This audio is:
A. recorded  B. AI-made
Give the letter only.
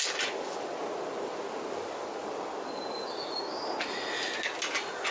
A